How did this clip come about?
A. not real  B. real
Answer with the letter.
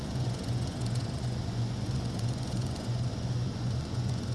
A